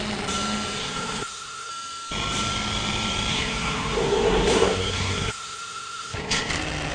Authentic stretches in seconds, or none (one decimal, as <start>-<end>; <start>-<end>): 0.0-0.8; 1.7-3.3; 6.5-6.9

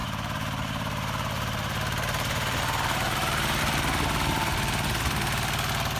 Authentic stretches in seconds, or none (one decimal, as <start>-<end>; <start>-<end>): 3.6-6.0

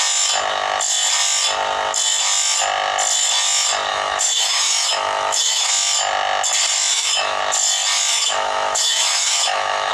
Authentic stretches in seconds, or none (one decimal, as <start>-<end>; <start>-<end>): 0.0-3.9; 5.7-6.9; 7.4-8.1